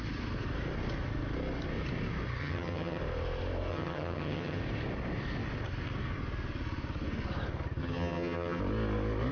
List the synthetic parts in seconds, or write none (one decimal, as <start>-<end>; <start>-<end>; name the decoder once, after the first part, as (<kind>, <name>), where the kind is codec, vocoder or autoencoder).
2.4-3.0 (vocoder, HiFi-GAN); 3.7-4.6; 7.8-8.6